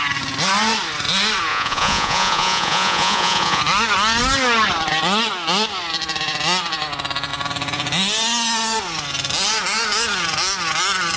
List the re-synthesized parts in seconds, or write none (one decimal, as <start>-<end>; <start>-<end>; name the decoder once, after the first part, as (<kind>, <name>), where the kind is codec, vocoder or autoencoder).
1.5-3.6 (vocoder, Vocos)